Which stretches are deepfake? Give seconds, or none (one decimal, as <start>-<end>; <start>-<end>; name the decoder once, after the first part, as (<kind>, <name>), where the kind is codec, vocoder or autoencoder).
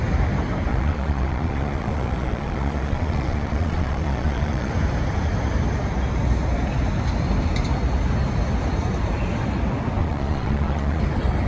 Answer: 0.7-4.7 (vocoder, Vocos); 10.0-11.0